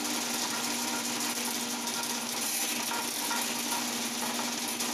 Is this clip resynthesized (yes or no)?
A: no